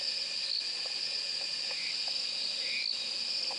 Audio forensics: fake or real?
real